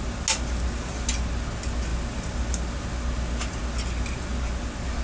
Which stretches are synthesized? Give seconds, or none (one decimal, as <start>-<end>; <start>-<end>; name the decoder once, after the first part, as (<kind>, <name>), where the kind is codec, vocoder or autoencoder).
none